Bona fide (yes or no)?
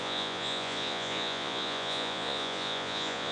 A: no